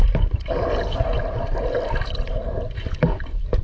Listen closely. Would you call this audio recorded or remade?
recorded